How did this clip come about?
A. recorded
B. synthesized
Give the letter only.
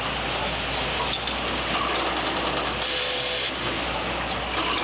A